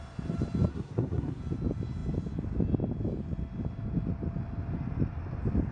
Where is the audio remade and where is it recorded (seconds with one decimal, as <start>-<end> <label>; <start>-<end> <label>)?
0.0-0.7 recorded; 0.7-1.4 remade; 1.4-5.7 recorded